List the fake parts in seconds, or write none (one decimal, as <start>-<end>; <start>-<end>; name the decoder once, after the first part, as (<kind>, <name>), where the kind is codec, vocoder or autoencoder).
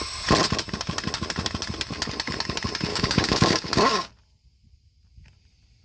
2.9-4.1 (codec, DAC)